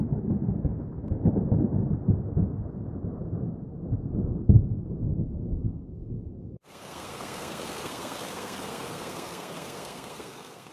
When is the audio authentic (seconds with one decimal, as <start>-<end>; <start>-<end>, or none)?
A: 0.0-5.1